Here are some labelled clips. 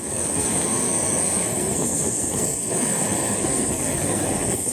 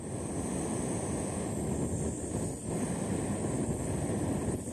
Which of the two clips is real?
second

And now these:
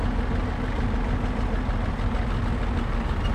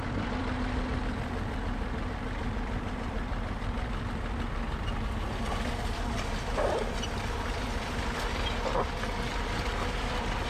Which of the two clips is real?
first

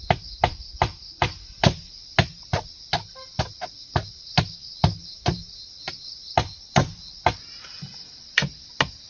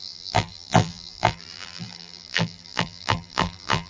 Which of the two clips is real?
first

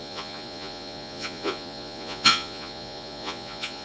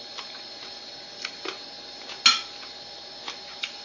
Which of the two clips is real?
second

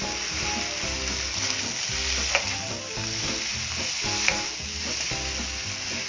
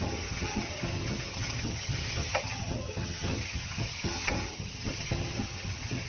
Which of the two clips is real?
first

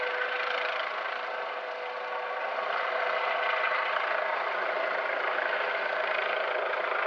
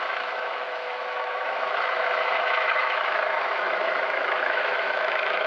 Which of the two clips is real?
first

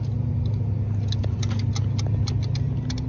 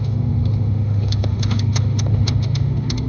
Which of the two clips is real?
first